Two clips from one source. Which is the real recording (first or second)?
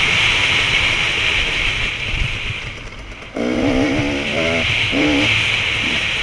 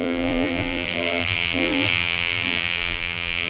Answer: first